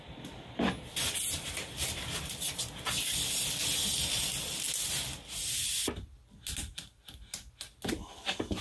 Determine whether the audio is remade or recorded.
recorded